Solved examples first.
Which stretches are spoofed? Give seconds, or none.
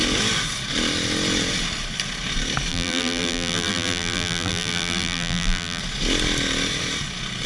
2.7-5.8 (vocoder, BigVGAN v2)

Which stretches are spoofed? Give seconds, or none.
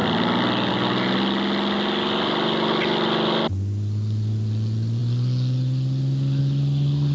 none